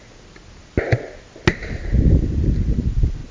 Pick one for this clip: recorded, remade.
recorded